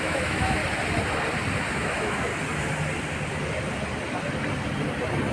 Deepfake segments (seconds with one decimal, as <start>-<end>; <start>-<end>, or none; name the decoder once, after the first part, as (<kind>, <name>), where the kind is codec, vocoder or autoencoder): 0.0-0.6 (autoencoder, DAC-VAE); 1.7-2.3